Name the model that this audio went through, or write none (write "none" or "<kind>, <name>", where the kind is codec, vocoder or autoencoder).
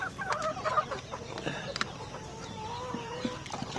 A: none